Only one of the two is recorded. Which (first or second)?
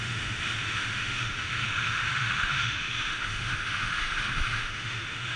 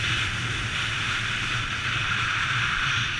second